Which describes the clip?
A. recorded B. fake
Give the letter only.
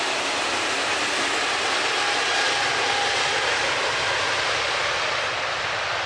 A